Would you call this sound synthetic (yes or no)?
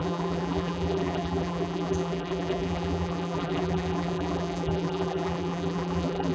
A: yes